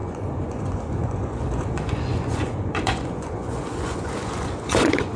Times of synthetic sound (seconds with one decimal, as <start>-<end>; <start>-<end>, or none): 0.0-5.2